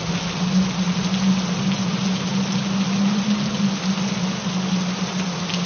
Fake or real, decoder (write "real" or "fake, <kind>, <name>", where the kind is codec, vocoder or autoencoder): real